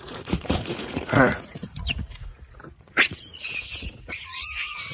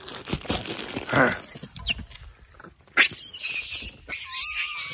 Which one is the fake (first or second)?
first